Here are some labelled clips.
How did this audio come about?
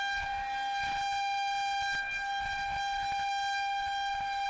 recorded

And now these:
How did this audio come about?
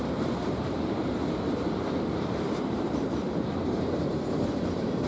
remade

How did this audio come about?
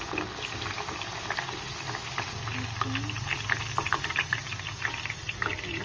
recorded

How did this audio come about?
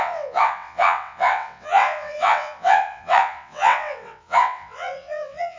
remade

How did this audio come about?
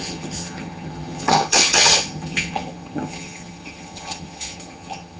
remade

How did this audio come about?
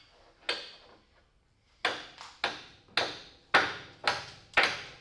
recorded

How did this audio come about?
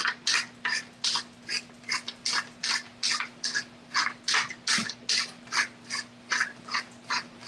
recorded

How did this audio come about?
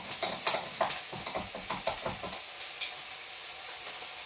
recorded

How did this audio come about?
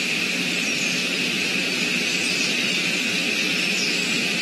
recorded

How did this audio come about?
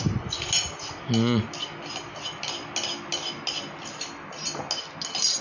recorded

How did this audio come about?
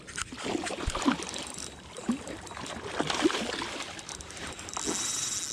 recorded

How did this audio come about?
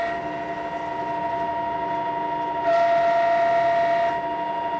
recorded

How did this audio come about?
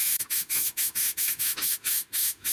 remade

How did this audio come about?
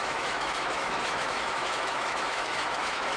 remade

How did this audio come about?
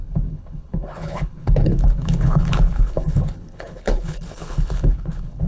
remade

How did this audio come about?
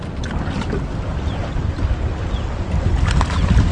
recorded